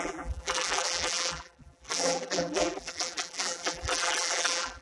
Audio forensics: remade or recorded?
remade